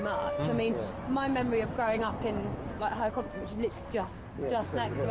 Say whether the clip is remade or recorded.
recorded